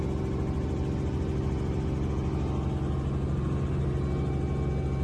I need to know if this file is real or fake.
real